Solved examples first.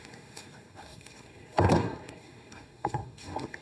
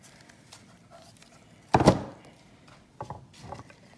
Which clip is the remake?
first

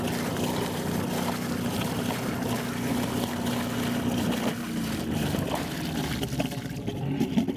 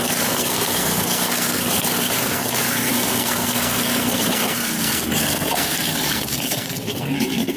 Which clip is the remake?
second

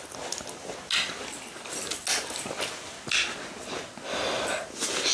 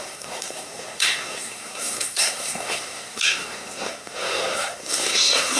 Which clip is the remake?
second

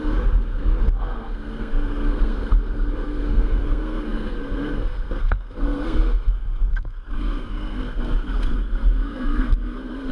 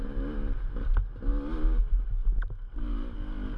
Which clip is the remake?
first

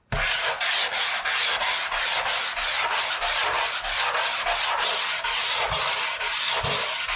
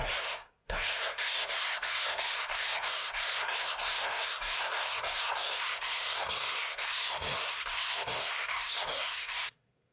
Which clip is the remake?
second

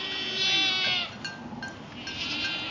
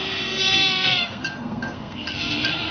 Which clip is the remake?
second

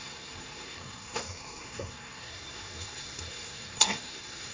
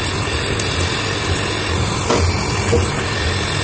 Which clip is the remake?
first